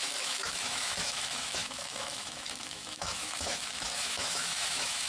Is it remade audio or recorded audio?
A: remade